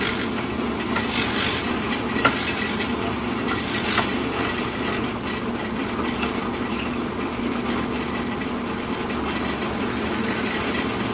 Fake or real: real